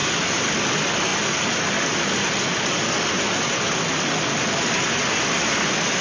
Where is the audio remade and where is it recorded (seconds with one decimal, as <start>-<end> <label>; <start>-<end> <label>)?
0.0-6.0 recorded